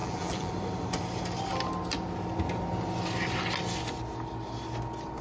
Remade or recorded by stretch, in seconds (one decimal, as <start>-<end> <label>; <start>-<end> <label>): 0.0-0.5 remade; 0.5-5.2 recorded